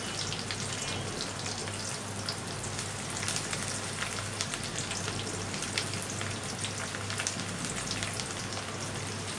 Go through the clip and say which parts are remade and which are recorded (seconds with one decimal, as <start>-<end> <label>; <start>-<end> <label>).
0.0-9.4 recorded